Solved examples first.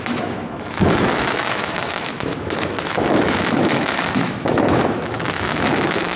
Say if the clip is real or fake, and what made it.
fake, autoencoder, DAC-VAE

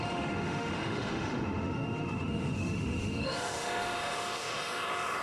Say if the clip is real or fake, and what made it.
fake, autoencoder, DAC-VAE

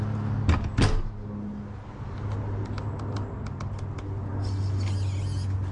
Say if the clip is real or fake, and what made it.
real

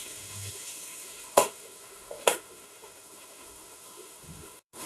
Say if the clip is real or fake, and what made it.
fake, autoencoder, DAC-VAE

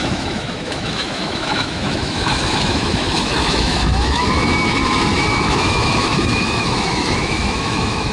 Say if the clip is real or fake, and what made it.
fake, autoencoder, DAC-VAE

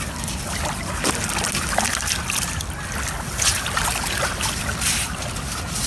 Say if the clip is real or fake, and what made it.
real